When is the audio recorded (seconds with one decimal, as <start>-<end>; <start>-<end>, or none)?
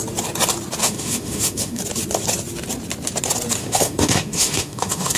0.0-0.8; 1.8-3.6